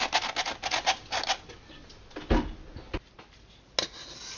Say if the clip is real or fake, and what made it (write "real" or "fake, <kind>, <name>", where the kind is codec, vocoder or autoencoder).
real